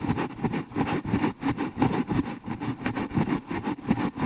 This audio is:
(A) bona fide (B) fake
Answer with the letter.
A